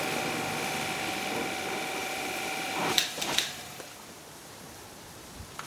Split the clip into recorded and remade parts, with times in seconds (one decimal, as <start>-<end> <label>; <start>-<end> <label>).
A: 0.0-2.0 recorded; 2.0-5.3 remade; 5.3-5.7 recorded